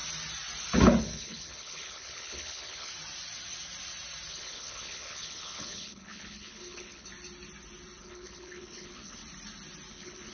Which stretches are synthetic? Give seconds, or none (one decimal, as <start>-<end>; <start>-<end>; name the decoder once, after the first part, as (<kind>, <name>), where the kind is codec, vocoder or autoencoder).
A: 1.0-2.9 (codec, HILCodec); 4.3-7.1; 8.0-9.2; 9.9-10.3